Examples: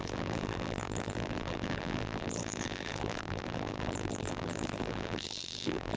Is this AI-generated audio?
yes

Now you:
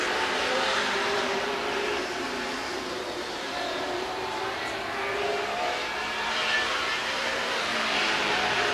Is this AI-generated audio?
yes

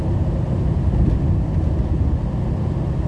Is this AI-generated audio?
no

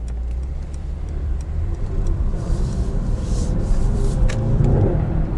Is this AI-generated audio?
yes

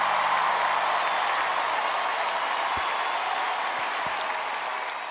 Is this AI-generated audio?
no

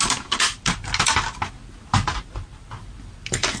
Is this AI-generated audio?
no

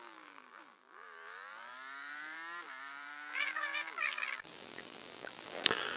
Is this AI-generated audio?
yes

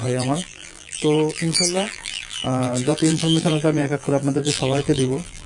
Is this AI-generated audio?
yes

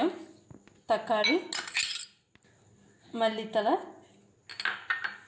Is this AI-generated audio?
no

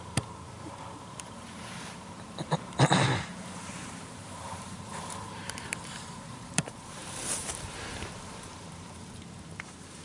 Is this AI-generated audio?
yes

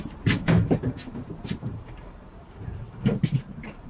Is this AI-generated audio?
yes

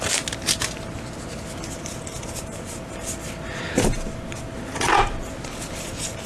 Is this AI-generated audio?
no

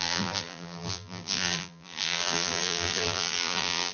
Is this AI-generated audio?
yes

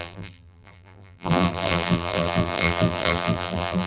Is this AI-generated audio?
yes